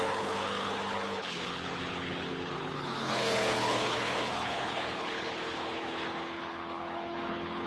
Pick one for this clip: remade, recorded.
remade